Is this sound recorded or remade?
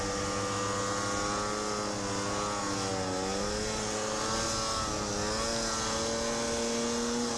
recorded